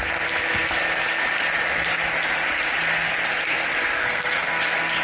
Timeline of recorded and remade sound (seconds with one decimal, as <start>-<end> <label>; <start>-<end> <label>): 0.0-3.9 recorded; 3.9-4.6 remade; 4.6-5.0 recorded